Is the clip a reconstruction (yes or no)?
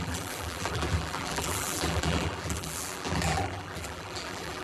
yes